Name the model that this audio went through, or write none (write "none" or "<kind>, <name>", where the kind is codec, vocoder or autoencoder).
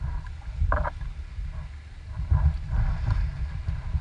none